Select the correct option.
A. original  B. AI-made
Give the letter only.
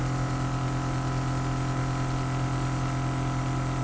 A